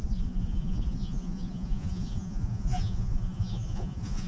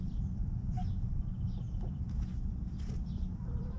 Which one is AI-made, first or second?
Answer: first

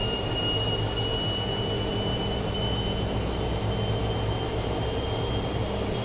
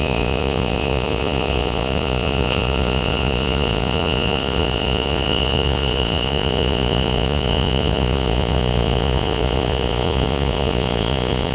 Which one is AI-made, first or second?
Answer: second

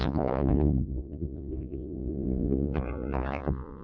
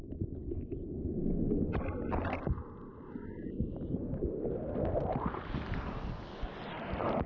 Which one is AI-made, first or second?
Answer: first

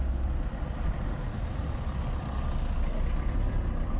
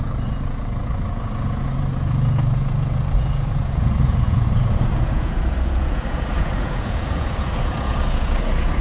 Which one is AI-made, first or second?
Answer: second